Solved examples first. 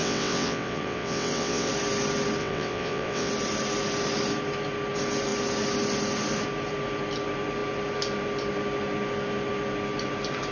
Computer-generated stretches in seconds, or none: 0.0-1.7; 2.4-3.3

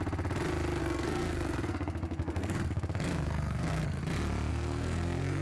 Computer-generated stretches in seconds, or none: 0.8-4.0; 4.5-5.4

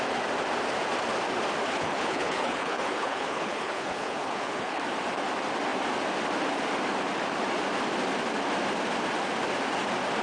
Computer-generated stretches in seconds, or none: 1.7-4.8